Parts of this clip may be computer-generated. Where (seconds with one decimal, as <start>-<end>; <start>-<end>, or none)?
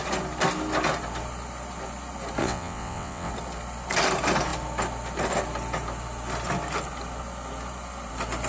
2.4-3.3